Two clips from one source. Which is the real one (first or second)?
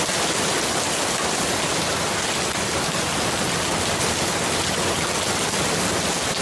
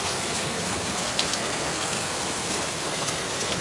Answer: first